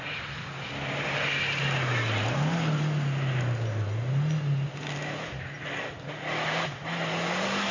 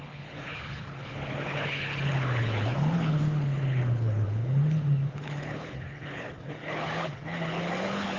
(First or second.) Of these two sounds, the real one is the first